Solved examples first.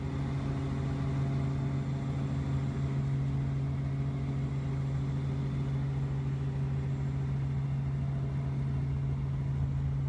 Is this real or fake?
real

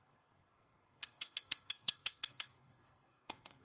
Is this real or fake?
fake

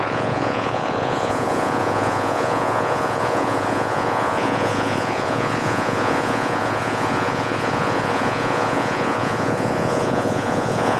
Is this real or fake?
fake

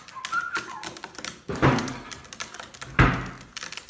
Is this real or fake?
real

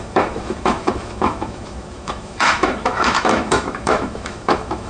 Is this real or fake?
fake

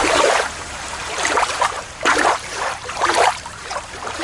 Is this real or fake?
fake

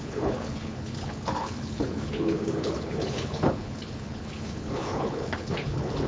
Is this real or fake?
fake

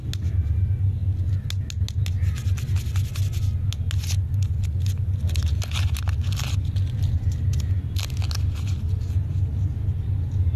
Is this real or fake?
real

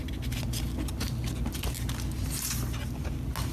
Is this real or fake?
real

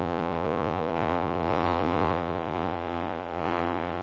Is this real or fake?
fake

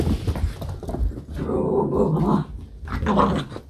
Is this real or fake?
real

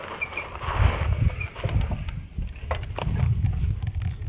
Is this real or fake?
real